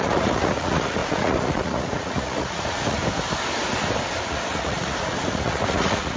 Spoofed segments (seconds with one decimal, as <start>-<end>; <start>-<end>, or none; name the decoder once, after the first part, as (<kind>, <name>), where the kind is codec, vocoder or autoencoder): 0.0-3.0 (vocoder, Vocos); 4.2-6.2